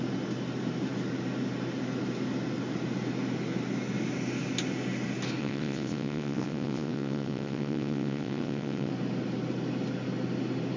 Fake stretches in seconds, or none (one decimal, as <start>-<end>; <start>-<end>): 5.4-8.9